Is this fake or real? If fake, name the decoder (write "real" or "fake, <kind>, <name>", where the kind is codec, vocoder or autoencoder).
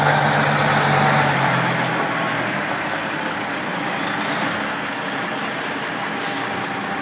real